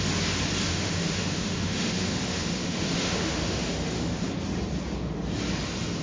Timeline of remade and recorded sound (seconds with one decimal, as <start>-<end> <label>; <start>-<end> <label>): 0.0-0.7 recorded; 0.7-4.3 remade; 4.3-6.0 recorded

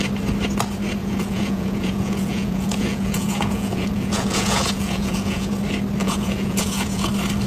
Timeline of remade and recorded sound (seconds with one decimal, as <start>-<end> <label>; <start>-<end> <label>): 0.0-1.0 recorded; 1.0-5.5 remade; 5.5-6.0 recorded; 6.0-7.1 remade; 7.1-7.5 recorded

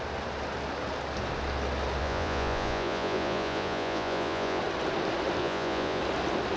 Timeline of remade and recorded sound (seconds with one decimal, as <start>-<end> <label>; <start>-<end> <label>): 0.0-2.0 recorded; 2.0-4.6 remade; 4.6-5.4 recorded; 5.4-6.0 remade; 6.0-6.6 recorded

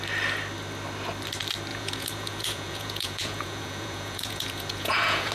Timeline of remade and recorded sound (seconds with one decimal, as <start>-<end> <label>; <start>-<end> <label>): 0.0-1.7 recorded; 1.7-5.3 remade

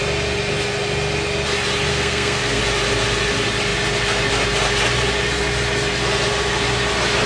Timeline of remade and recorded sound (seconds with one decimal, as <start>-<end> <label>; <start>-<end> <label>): 0.0-1.9 recorded; 1.9-2.6 remade; 2.6-7.3 recorded